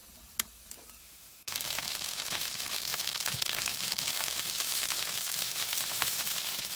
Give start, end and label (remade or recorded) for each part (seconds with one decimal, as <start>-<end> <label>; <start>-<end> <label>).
0.0-1.0 recorded; 1.0-6.8 remade